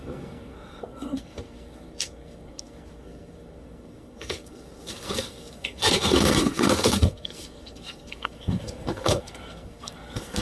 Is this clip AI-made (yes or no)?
yes